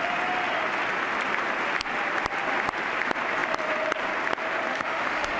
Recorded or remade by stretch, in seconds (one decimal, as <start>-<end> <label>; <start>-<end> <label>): 0.0-4.7 recorded; 4.7-5.4 remade